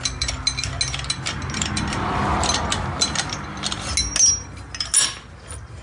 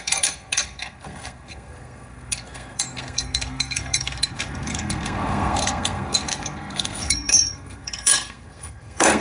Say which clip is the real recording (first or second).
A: first